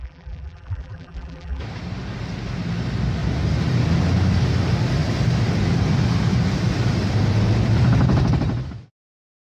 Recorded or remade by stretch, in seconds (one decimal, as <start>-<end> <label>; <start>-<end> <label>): 0.0-1.6 remade; 1.6-9.5 recorded